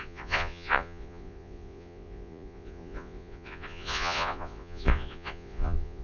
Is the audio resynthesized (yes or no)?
yes